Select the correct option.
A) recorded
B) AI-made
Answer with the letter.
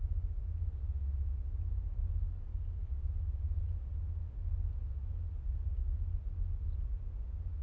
A